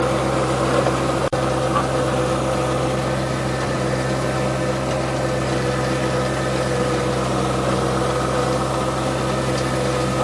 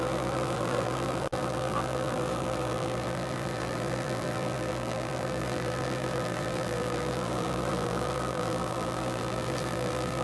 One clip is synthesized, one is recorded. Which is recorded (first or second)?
first